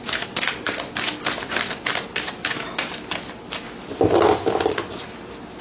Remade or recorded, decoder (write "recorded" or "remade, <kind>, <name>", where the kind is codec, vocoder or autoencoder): recorded